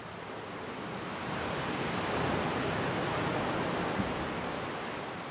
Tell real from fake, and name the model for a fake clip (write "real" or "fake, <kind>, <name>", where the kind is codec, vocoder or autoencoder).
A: real